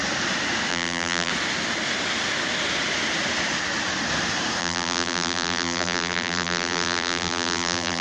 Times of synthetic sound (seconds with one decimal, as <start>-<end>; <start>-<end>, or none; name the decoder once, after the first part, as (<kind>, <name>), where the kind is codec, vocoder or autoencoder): 0.7-1.3 (vocoder, BigVGAN v2); 4.6-8.0